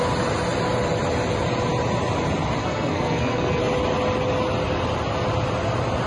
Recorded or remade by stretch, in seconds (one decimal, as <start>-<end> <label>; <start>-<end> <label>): 0.0-2.6 recorded; 2.6-3.6 remade; 3.6-6.1 recorded